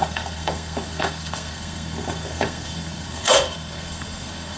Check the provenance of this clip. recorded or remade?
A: remade